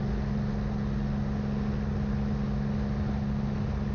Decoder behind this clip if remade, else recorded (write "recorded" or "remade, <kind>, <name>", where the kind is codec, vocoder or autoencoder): recorded